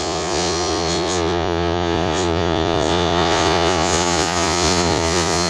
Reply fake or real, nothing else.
fake